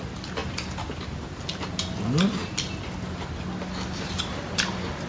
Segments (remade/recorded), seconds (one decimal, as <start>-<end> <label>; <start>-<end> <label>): 0.0-5.1 recorded